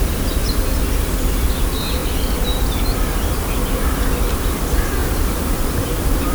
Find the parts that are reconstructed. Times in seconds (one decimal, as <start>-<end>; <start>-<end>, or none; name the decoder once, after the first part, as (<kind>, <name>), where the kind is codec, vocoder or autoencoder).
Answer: 0.4-1.1 (vocoder, BigVGAN v2); 2.0-3.3; 5.0-5.6